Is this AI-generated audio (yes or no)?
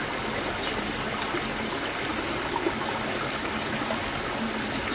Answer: no